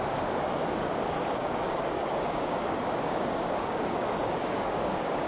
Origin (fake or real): fake